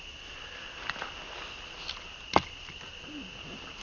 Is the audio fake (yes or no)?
no